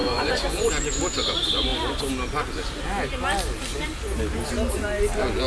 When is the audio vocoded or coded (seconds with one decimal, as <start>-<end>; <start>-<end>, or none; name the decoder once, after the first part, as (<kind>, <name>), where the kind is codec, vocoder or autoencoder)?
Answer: 0.0-0.7 (vocoder, Vocos)